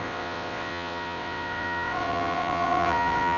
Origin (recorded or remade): remade